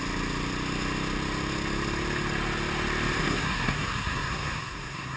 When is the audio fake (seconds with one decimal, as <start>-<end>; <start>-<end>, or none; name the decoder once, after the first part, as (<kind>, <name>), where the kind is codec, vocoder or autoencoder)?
3.2-5.2 (codec, SNAC)